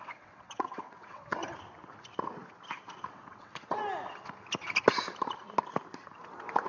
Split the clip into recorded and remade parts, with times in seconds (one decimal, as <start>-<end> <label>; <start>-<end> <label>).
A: 0.0-1.4 remade; 1.4-3.1 recorded; 3.1-3.8 remade; 3.8-6.7 recorded